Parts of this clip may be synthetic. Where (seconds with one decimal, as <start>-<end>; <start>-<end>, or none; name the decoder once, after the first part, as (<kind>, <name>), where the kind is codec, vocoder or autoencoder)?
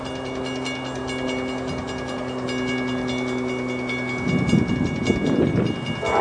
none